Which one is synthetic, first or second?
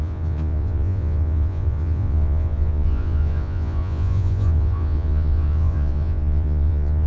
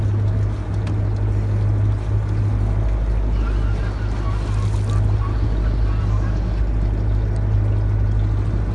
first